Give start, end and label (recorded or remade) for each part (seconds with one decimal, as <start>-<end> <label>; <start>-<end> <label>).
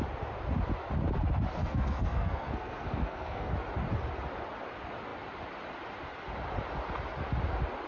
0.0-1.6 recorded; 1.6-3.5 remade; 3.5-7.9 recorded